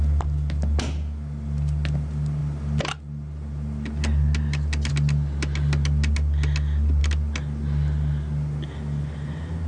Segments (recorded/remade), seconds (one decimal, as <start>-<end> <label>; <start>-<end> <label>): 0.0-9.7 recorded